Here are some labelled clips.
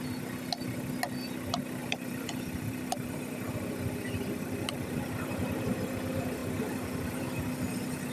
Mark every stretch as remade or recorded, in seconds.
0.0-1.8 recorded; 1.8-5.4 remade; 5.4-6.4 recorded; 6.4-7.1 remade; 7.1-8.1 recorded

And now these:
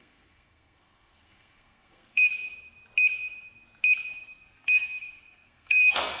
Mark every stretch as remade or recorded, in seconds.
0.0-2.3 remade; 2.3-4.1 recorded; 4.1-6.2 remade

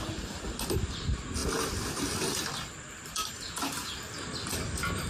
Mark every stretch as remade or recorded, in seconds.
0.0-5.1 recorded